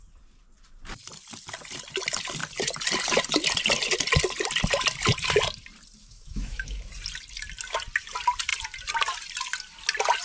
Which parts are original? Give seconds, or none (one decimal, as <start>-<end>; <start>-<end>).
0.0-6.0; 6.9-10.2